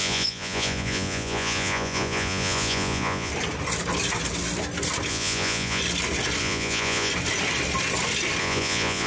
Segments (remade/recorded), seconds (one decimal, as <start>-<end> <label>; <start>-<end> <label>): 0.0-3.3 remade; 3.3-5.1 recorded; 5.1-5.8 remade; 5.8-6.4 recorded; 6.4-7.1 remade; 7.1-8.4 recorded; 8.4-9.1 remade